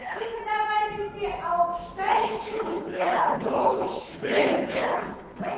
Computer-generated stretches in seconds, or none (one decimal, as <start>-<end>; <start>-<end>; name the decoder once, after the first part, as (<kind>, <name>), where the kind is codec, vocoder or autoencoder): 0.0-0.4 (codec, HILCodec); 2.1-5.6